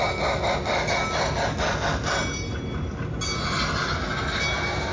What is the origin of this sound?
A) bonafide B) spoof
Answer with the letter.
A